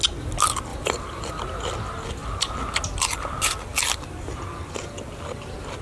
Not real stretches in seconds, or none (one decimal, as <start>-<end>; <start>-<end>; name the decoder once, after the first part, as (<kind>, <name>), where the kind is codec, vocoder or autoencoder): 0.7-1.3 (vocoder, BigVGAN v2)